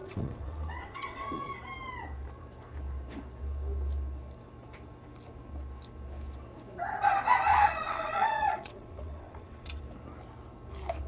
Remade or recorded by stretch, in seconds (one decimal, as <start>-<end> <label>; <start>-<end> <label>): 0.0-1.5 remade; 1.5-7.5 recorded; 7.5-9.8 remade; 9.8-11.1 recorded